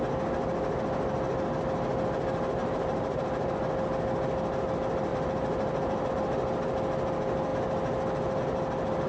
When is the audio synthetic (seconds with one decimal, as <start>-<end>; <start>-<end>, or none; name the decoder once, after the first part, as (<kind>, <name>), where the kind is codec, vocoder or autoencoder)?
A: 2.6-3.5 (vocoder, BigVGAN v2); 5.1-6.1